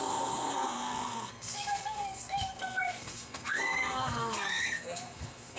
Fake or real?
fake